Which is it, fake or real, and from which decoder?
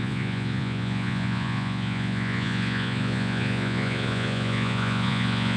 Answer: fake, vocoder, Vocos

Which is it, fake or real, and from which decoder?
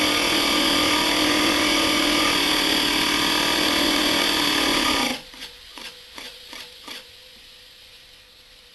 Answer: fake, vocoder, Vocos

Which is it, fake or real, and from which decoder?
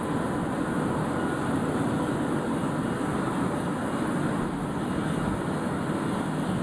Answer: real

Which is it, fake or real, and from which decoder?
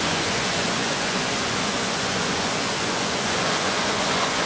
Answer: fake, vocoder, Vocos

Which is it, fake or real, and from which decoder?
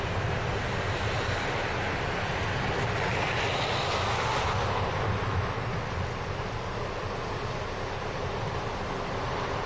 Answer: real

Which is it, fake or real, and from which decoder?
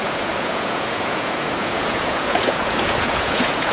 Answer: fake, vocoder, Vocos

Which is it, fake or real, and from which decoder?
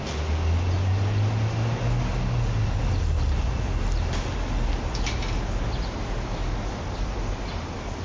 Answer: real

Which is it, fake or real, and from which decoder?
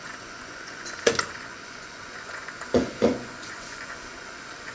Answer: fake, vocoder, Vocos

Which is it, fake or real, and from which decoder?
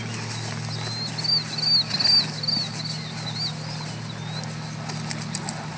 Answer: real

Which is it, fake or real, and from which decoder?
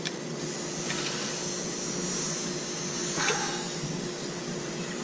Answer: real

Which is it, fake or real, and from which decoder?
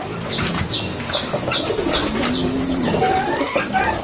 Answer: real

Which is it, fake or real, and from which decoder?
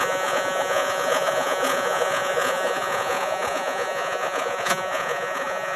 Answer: fake, vocoder, Vocos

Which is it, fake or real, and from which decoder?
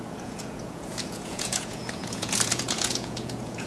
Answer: fake, vocoder, Vocos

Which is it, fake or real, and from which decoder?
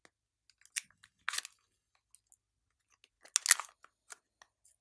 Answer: real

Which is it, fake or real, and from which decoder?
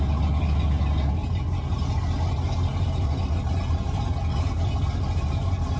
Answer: real